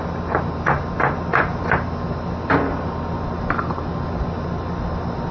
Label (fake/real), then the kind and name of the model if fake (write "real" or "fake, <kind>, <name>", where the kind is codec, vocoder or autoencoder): real